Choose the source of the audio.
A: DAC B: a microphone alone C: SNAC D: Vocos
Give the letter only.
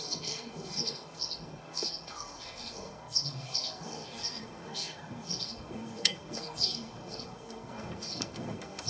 C